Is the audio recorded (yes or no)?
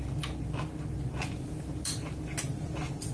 yes